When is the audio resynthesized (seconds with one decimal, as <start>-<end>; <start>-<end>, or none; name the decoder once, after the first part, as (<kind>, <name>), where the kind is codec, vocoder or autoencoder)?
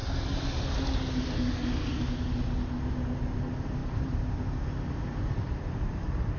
3.8-6.0 (vocoder, BigVGAN v2)